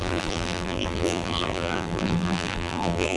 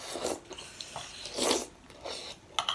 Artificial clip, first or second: first